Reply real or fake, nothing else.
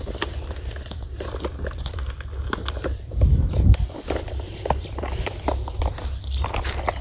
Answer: fake